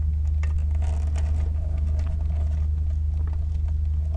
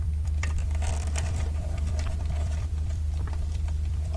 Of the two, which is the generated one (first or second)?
second